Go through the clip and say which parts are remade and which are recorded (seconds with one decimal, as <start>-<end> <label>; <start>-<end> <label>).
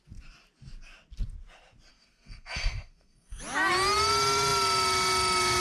0.0-1.9 recorded; 1.9-3.4 remade; 3.4-5.6 recorded